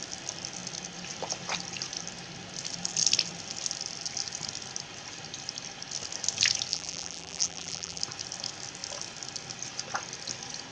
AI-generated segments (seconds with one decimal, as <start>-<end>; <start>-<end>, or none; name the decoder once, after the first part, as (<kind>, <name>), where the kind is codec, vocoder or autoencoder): 6.7-8.0 (vocoder, BigVGAN v2)